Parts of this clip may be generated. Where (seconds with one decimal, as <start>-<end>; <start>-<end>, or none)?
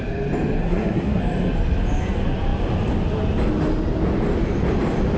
0.6-1.2